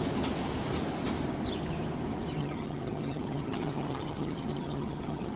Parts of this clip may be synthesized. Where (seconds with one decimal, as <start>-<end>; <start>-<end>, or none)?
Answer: 2.4-5.4